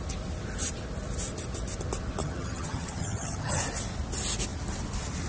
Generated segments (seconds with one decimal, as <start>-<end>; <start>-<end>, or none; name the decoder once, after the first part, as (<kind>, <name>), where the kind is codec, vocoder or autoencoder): 2.2-3.6 (vocoder, HiFi-GAN)